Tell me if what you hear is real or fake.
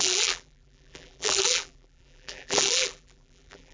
fake